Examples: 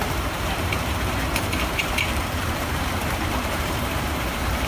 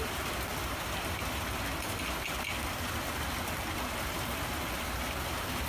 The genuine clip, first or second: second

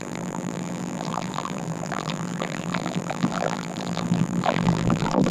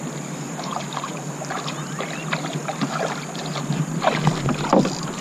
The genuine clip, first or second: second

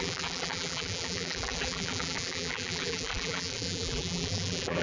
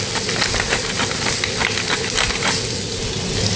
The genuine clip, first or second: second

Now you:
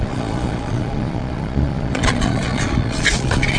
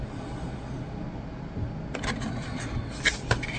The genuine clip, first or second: second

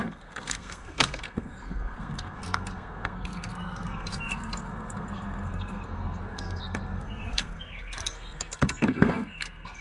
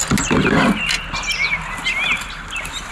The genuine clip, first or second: second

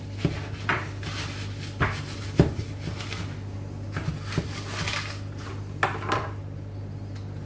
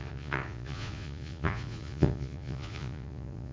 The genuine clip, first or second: first